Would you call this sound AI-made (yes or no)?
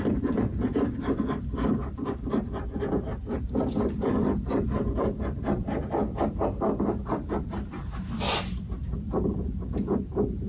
yes